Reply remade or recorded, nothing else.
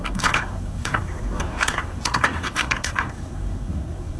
remade